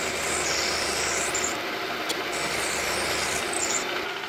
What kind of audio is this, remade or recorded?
recorded